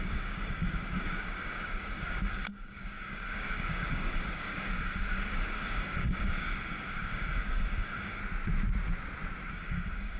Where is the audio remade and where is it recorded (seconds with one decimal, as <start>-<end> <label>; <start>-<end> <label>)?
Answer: 0.0-8.2 remade; 8.2-9.5 recorded; 9.5-10.2 remade